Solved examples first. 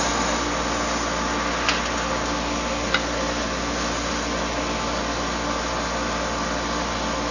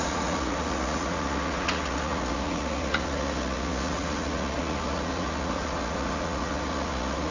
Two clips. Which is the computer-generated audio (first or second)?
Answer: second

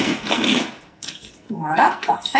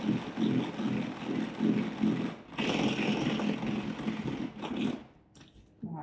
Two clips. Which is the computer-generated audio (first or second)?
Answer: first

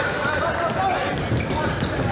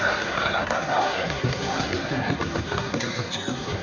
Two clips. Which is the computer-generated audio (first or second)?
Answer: second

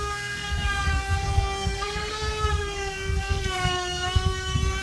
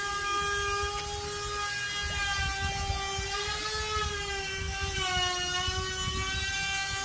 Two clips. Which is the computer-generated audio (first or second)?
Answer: first